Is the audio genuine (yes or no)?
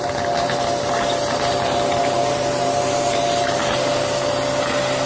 yes